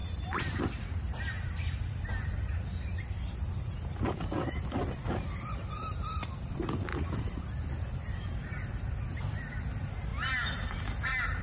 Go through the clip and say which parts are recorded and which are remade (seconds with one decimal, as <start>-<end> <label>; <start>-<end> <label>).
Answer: 0.0-4.7 remade; 4.7-6.9 recorded; 6.9-8.9 remade; 8.9-11.4 recorded